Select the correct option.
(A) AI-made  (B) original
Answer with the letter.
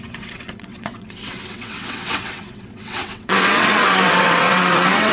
A